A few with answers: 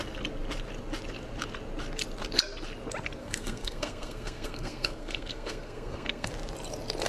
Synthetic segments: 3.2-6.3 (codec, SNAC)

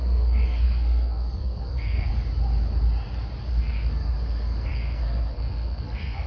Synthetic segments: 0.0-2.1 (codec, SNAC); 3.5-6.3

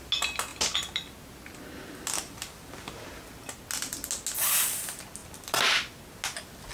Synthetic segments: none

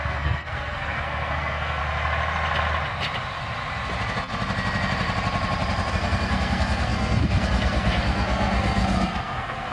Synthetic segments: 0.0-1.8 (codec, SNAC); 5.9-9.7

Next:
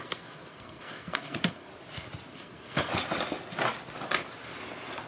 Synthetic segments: 0.0-1.7 (codec, SNAC); 2.3-2.9